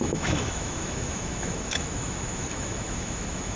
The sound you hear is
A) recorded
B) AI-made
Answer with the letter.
B